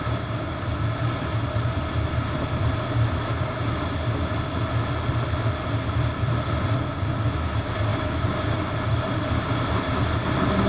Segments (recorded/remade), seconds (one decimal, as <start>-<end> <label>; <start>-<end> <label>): 0.0-10.7 recorded